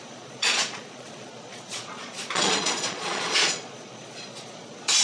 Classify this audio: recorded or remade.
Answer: remade